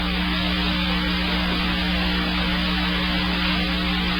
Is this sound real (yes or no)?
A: yes